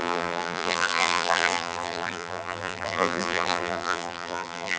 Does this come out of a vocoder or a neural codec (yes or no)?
yes